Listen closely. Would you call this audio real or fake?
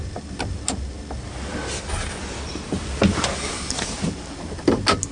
real